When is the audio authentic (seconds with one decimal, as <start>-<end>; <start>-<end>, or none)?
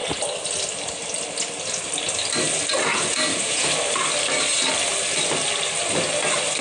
0.0-2.9; 3.7-6.6